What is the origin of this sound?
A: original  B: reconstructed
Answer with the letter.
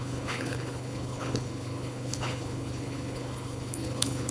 B